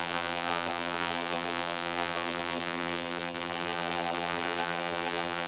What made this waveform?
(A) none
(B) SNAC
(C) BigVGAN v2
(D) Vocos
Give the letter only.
C